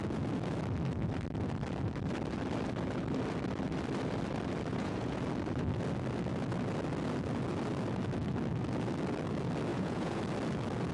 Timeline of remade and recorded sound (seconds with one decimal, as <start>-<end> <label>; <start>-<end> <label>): 0.0-4.7 recorded; 4.7-5.2 remade; 5.2-9.7 recorded; 9.7-10.2 remade; 10.2-10.9 recorded